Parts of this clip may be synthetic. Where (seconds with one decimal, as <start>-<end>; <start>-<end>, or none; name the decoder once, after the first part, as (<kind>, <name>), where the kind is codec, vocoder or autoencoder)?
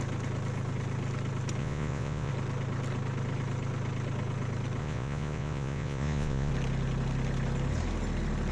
1.6-2.3 (vocoder, Vocos); 4.8-6.5